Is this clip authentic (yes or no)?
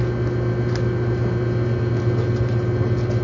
yes